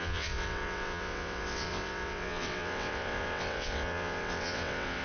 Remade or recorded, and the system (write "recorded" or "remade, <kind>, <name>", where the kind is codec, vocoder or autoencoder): remade, vocoder, WaveNeXt